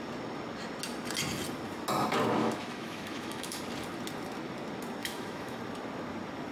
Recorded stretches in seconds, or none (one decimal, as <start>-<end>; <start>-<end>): 0.0-2.4; 3.6-5.0; 5.6-6.5